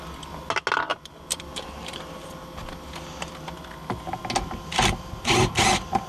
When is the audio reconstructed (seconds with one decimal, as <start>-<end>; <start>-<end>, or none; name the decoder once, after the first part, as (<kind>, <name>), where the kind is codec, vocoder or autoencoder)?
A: 0.9-2.0 (vocoder, BigVGAN v2)

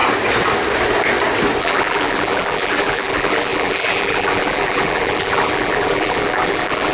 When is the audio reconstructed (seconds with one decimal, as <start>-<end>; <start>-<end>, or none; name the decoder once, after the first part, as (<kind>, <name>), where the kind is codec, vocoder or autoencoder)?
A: 1.6-6.9 (vocoder, BigVGAN v2)